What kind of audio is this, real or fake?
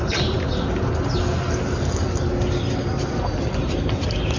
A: real